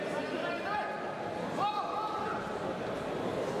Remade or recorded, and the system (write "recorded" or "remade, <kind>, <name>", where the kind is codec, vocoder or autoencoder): recorded